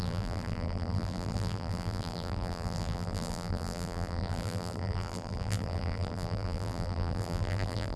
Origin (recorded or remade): remade